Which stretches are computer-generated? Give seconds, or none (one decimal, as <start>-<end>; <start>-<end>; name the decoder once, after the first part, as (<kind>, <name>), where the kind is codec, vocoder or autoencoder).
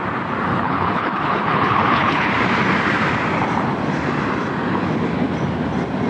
0.5-2.3 (codec, HILCodec)